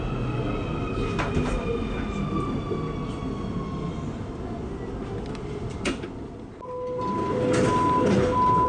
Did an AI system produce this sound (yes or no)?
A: no